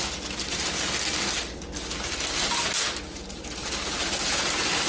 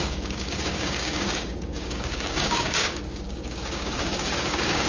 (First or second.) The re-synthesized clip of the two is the second